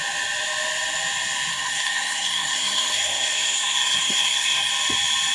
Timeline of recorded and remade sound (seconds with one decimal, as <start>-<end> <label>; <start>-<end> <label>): 0.0-1.5 recorded; 1.5-4.7 remade; 4.7-5.3 recorded